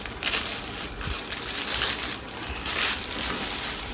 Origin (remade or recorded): recorded